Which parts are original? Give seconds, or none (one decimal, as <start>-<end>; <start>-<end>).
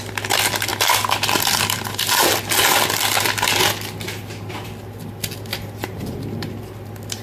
0.0-5.5; 6.6-7.2